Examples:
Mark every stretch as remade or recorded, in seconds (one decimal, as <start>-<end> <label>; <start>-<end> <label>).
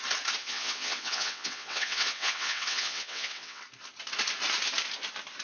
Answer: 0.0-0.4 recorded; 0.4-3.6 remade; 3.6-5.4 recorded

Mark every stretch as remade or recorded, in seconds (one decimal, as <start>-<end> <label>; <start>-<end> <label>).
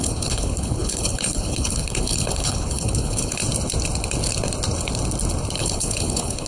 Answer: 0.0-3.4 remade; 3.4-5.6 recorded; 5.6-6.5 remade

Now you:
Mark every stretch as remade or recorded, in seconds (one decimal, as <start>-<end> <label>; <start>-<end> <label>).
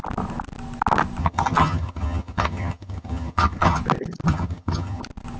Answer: 0.0-1.2 recorded; 1.2-3.8 remade; 3.8-4.3 recorded; 4.3-5.0 remade; 5.0-5.4 recorded